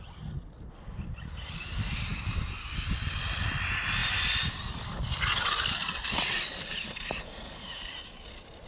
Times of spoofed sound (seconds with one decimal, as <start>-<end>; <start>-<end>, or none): none